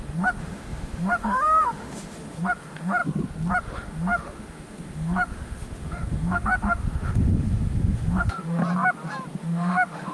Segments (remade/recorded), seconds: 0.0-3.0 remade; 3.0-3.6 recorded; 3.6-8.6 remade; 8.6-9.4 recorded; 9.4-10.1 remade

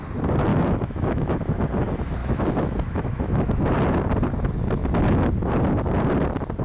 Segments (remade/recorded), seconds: 0.0-0.5 recorded; 0.5-1.4 remade; 1.4-2.2 recorded; 2.2-3.6 remade; 3.6-6.6 recorded

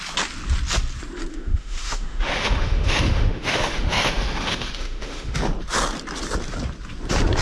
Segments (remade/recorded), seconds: 0.0-1.3 recorded; 1.3-5.4 remade; 5.4-7.4 recorded

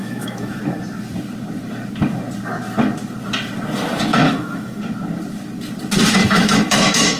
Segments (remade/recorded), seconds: 0.0-0.6 remade; 0.6-4.1 recorded; 4.1-4.8 remade; 4.8-6.2 recorded; 6.2-7.2 remade

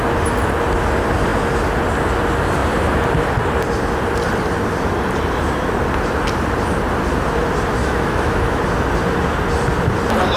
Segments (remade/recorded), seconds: 0.0-7.8 recorded; 7.8-8.6 remade; 8.6-10.4 recorded

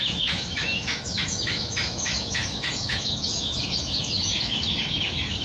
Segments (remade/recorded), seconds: 0.0-5.4 remade

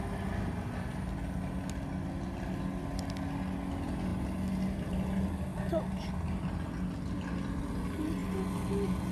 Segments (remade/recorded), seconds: 0.0-9.1 recorded